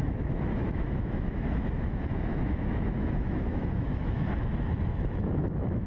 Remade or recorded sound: remade